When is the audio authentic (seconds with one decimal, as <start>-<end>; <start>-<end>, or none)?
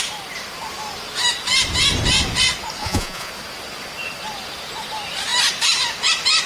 0.0-2.8; 3.3-6.5